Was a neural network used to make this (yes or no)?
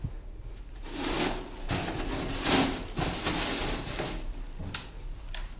no